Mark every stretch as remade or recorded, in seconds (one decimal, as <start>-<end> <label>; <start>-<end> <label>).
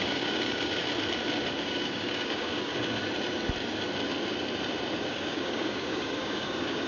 0.0-0.8 remade; 0.8-1.6 recorded; 1.6-2.7 remade; 2.7-5.1 recorded; 5.1-6.9 remade